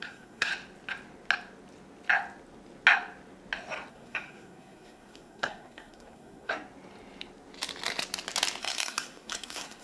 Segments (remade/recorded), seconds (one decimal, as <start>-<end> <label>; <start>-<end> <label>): 0.0-0.5 remade; 0.5-3.9 recorded; 3.9-6.5 remade; 6.5-8.6 recorded; 8.6-9.8 remade